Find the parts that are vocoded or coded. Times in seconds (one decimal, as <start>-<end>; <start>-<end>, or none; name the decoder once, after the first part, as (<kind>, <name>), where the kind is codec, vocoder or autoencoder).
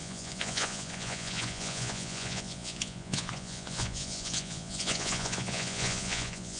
0.0-6.6 (vocoder, Vocos)